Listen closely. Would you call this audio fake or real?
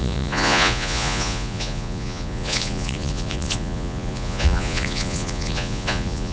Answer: fake